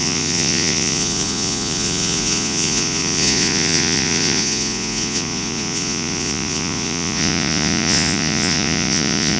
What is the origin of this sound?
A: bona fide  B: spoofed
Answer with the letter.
B